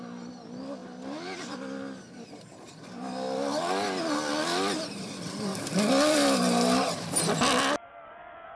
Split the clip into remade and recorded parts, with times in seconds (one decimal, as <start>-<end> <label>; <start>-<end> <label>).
0.0-8.6 recorded